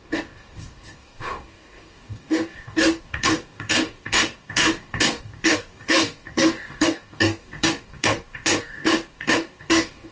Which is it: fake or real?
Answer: fake